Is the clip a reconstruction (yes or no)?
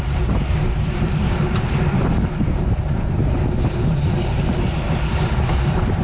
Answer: yes